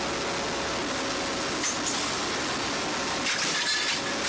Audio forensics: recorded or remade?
recorded